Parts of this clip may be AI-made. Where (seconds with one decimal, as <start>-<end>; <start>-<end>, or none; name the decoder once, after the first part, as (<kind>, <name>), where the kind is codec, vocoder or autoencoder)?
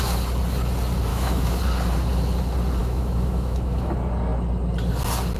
1.1-1.6 (autoencoder, DAC-VAE); 2.8-3.9